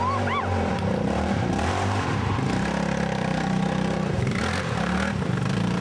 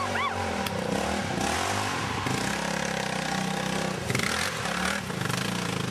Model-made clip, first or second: first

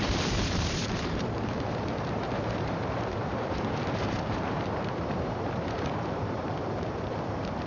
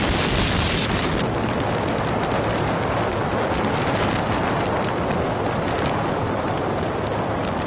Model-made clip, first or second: first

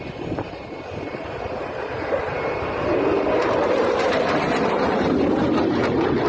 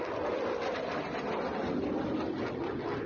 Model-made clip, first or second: first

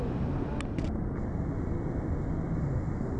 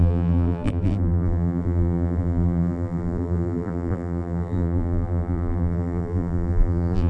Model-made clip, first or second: second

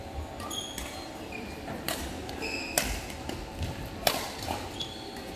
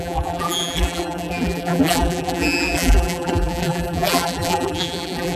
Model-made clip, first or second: second